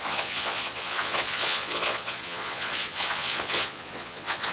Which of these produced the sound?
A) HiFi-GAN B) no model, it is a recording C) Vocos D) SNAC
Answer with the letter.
C